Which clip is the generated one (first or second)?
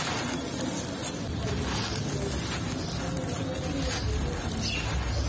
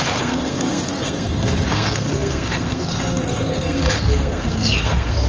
second